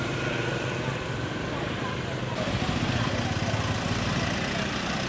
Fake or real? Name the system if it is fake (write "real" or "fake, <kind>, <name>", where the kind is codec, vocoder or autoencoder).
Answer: real